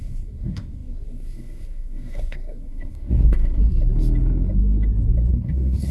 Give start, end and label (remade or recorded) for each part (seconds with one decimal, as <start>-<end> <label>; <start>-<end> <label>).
0.0-3.6 remade; 3.6-5.3 recorded; 5.3-5.9 remade